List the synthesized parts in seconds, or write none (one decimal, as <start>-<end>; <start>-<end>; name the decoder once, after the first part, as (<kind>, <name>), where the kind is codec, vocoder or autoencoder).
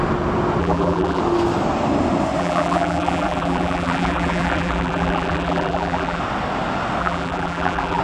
0.6-1.2 (vocoder, BigVGAN v2); 2.4-6.2; 7.0-8.0